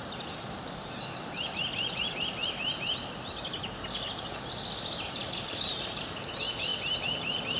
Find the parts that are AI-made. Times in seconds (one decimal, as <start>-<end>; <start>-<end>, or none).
5.2-6.0; 6.7-7.6